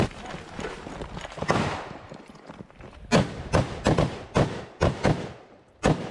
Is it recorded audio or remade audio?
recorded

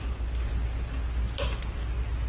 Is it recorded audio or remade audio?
recorded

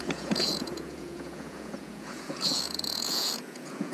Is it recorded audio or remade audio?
remade